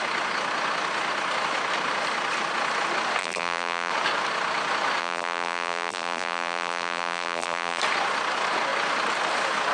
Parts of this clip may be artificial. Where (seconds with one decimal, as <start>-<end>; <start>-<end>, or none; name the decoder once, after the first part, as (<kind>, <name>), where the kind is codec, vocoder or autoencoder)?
3.2-3.9 (vocoder, BigVGAN v2); 5.0-7.8